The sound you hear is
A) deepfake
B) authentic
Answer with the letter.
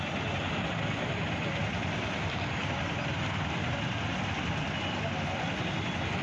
B